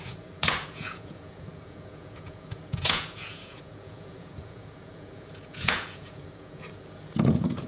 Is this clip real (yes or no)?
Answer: no